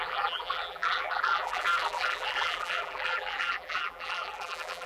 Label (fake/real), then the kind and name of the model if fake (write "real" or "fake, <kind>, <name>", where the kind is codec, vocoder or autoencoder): fake, vocoder, BigVGAN v2